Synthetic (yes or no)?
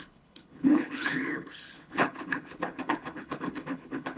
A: yes